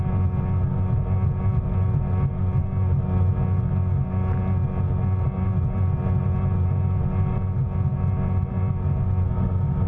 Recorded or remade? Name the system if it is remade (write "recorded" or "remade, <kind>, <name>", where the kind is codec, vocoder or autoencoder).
recorded